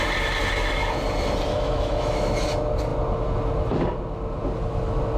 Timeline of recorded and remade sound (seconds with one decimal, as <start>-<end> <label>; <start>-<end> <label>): 0.0-1.5 recorded; 1.5-2.3 remade; 2.3-5.2 recorded